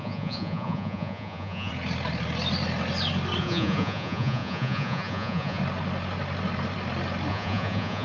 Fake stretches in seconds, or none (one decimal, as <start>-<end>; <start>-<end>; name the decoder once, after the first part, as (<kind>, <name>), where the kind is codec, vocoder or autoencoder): 0.0-1.7 (vocoder, Vocos); 3.4-5.6; 7.3-8.0